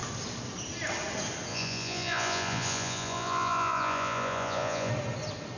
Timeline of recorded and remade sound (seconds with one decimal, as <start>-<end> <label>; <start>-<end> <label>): 0.0-1.5 recorded; 1.5-4.9 remade; 4.9-5.6 recorded